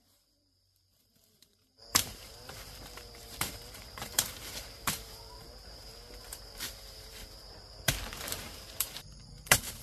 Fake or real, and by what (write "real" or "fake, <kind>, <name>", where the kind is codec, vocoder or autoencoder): fake, vocoder, BigVGAN v2